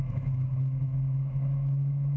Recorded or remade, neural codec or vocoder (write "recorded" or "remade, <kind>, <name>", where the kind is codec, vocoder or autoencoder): remade, autoencoder, DAC-VAE